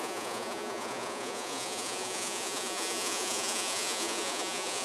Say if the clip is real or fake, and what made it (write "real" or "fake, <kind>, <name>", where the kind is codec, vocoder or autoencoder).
fake, vocoder, Vocos